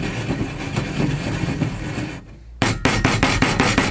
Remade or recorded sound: recorded